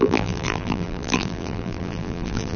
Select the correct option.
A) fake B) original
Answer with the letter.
A